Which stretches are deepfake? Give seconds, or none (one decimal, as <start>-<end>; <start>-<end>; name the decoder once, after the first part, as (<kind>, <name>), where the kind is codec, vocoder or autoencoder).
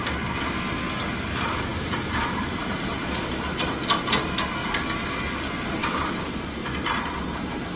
1.7-3.0 (vocoder, BigVGAN v2); 4.6-5.1; 5.8-6.3